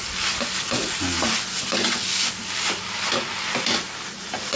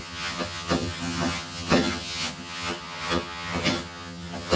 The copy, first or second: second